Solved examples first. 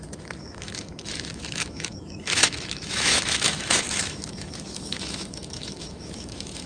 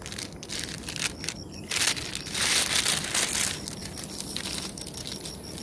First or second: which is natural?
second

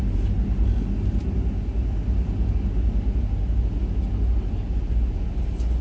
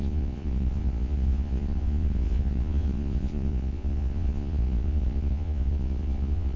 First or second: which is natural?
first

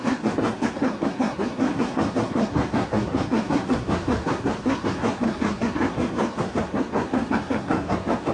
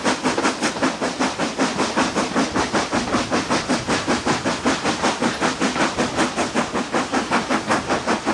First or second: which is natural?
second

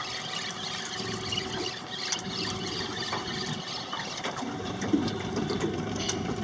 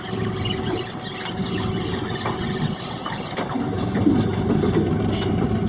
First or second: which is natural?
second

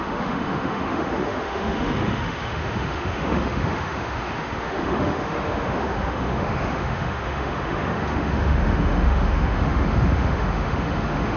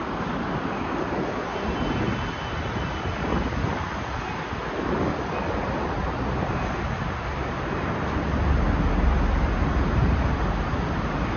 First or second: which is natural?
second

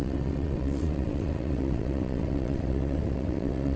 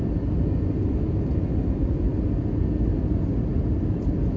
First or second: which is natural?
second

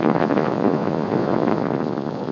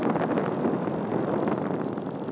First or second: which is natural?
second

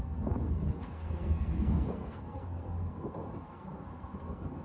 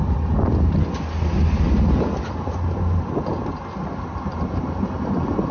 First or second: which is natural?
second